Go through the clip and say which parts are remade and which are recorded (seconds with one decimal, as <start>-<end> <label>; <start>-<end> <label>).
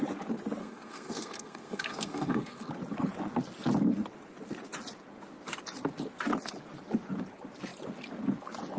0.0-0.6 recorded; 0.6-2.7 remade; 2.7-8.8 recorded